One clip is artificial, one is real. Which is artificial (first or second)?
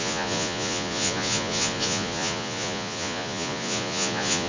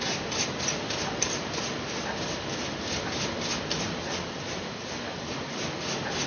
first